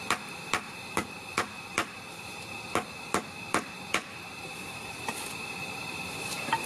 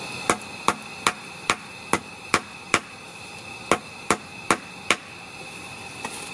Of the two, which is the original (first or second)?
second